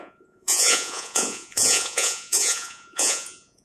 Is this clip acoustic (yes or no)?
no